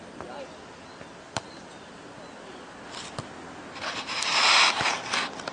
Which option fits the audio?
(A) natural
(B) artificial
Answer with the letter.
A